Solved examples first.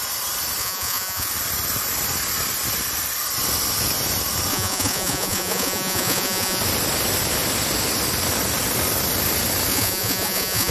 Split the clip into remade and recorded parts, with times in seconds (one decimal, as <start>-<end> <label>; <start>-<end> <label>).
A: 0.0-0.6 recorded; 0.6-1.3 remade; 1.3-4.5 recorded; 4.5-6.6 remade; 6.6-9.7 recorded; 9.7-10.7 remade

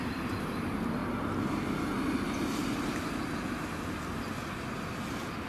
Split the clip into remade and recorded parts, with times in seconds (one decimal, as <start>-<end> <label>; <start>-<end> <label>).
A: 0.0-5.5 recorded

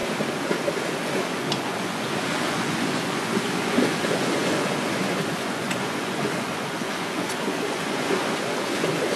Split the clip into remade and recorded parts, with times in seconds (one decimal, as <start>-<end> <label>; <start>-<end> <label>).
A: 0.0-1.0 recorded; 1.0-9.2 remade

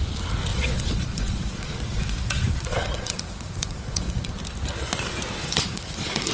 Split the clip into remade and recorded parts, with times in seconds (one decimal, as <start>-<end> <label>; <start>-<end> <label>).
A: 0.0-0.5 recorded; 0.5-4.3 remade; 4.3-5.4 recorded; 5.4-6.3 remade

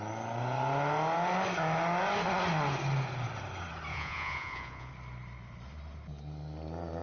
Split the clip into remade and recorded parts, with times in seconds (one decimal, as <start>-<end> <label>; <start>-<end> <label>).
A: 0.0-3.9 recorded; 3.9-4.9 remade; 4.9-7.0 recorded

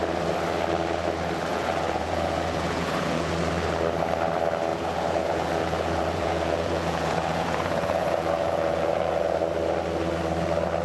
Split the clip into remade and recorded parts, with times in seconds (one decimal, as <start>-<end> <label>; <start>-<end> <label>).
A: 0.0-1.5 recorded; 1.5-3.3 remade; 3.3-4.7 recorded; 4.7-9.4 remade; 9.4-10.8 recorded